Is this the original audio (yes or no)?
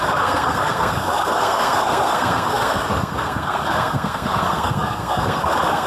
no